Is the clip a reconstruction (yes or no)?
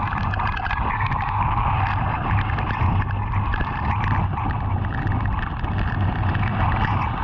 no